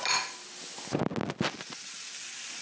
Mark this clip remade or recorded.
recorded